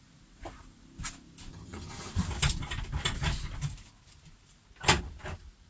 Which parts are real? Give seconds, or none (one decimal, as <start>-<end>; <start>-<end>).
0.0-1.5; 2.1-5.7